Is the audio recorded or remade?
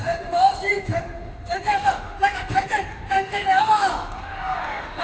remade